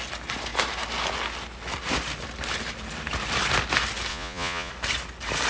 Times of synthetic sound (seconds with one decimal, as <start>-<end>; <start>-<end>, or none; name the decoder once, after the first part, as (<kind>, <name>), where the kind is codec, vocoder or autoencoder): 4.1-4.7 (vocoder, Vocos)